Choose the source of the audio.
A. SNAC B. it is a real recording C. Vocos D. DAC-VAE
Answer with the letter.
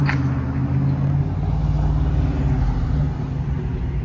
B